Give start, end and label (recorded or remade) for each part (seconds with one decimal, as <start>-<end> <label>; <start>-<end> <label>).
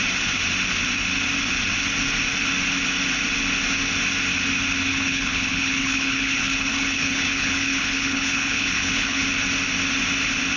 0.0-4.9 recorded; 4.9-9.2 remade; 9.2-10.6 recorded